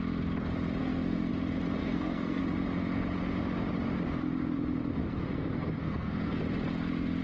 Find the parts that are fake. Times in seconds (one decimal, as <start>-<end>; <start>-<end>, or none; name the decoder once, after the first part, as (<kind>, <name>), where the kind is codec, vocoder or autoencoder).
0.8-1.3 (codec, SNAC); 1.8-2.4; 5.0-6.4

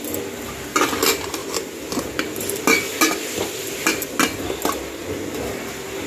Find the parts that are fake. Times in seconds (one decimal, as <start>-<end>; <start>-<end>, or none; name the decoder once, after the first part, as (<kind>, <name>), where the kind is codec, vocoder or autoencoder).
none

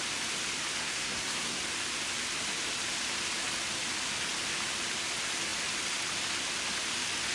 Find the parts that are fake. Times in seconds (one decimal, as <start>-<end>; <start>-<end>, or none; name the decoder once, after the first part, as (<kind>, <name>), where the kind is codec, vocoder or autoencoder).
0.8-1.6 (codec, SNAC)

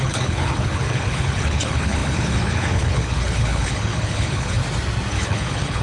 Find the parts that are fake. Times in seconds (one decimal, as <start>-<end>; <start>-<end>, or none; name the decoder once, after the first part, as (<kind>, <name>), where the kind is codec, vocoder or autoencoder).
0.0-4.6 (codec, HILCodec); 5.1-5.8

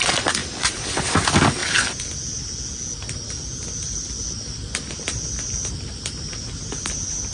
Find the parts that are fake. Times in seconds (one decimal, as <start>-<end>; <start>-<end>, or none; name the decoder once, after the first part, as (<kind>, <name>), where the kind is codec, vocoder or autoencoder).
0.4-1.1 (vocoder, BigVGAN v2)